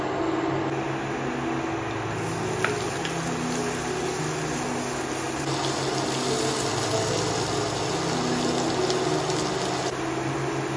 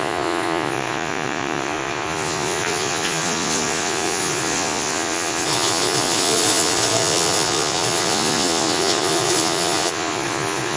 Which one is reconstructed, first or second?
second